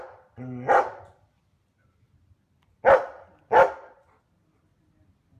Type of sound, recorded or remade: recorded